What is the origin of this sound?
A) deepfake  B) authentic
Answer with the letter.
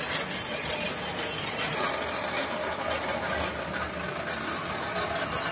B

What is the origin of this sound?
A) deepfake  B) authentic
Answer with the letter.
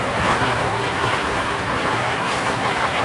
A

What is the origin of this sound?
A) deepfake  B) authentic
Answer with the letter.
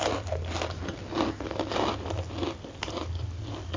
B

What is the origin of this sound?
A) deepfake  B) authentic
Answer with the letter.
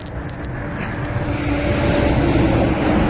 B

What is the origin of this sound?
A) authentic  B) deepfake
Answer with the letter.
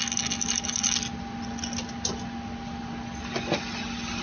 A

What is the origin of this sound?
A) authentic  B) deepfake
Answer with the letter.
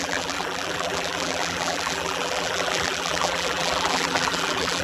B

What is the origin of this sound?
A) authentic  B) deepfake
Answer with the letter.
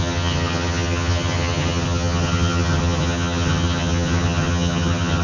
B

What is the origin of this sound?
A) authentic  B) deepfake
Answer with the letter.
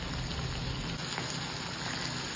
A